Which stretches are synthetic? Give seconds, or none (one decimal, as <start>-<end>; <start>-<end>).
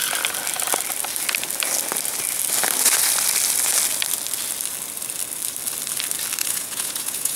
6.4-7.4